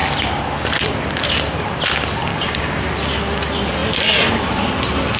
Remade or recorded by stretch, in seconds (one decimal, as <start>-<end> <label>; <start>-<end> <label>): 0.0-2.3 recorded; 2.3-2.8 remade; 2.8-5.2 recorded